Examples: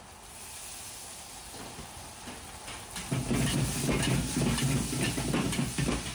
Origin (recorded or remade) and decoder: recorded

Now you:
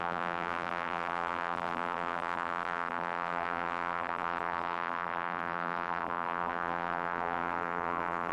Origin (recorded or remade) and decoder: remade, vocoder, BigVGAN v2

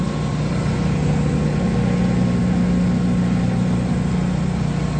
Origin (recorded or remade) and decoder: recorded